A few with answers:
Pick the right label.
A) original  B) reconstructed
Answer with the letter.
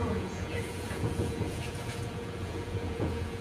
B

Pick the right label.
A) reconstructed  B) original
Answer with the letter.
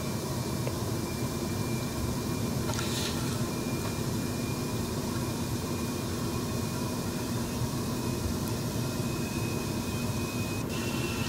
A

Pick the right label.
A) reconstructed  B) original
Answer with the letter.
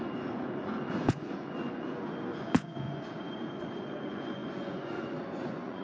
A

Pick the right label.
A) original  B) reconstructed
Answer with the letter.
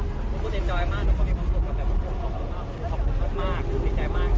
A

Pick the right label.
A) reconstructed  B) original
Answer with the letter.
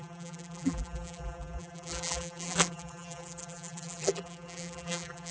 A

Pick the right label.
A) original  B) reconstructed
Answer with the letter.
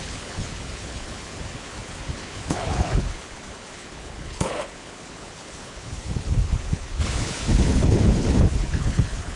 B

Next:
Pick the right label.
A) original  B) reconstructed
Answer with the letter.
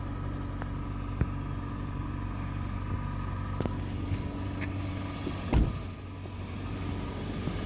A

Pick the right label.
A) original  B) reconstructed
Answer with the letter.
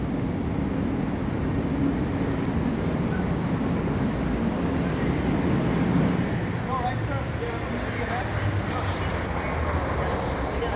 A